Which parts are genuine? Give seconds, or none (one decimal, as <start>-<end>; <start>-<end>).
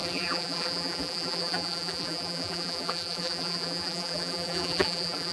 none